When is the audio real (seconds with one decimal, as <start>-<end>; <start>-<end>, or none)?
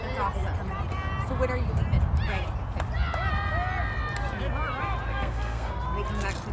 0.0-5.1; 5.8-6.5